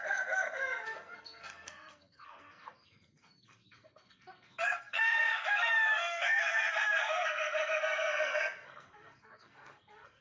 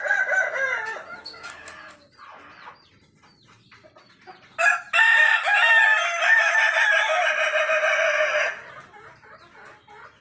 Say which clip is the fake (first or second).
first